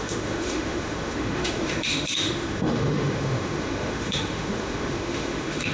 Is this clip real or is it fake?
fake